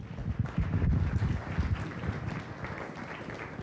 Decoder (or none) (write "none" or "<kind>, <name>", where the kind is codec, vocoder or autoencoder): none